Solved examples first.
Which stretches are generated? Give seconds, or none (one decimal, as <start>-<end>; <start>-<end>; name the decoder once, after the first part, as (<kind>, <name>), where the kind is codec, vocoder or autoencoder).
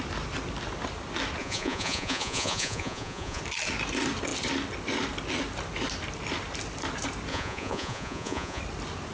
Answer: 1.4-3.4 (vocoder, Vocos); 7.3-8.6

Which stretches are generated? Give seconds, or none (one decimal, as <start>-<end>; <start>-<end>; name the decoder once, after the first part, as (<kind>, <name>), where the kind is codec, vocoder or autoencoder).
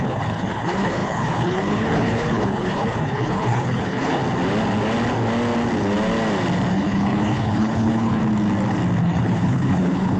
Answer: 0.0-4.2 (codec, HILCodec); 6.7-8.2; 9.0-10.2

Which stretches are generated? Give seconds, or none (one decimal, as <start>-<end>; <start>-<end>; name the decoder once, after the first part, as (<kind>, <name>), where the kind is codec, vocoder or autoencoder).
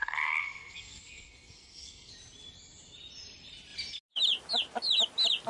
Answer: 0.0-2.1 (codec, SNAC)